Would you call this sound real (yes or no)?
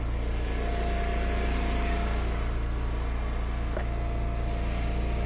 yes